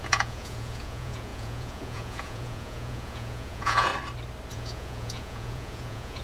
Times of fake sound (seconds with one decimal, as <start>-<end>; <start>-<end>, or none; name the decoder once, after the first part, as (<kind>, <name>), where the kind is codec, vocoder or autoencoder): 0.0-3.9 (vocoder, Vocos); 4.5-6.2